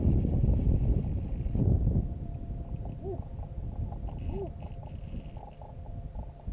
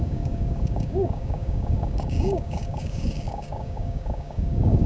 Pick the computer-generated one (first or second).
second